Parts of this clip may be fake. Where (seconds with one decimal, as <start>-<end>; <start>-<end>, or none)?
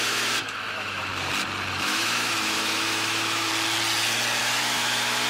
0.0-1.1; 1.7-3.5; 4.4-5.3